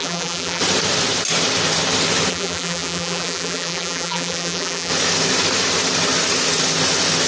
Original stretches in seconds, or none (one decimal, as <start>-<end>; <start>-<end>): 0.6-2.3; 4.9-7.3

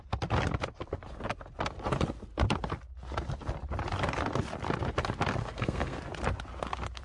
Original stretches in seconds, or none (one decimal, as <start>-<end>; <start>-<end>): 0.0-5.4; 6.0-7.0

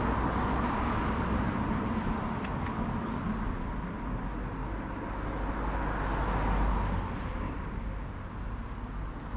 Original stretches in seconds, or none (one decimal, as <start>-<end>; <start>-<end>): 0.0-9.4

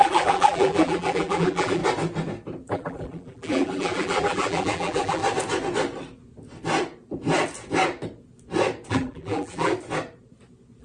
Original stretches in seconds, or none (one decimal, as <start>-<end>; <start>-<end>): 1.8-2.7; 5.2-8.9; 9.7-10.8

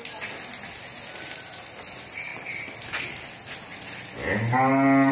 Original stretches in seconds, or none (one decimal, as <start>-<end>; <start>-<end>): 0.0-5.1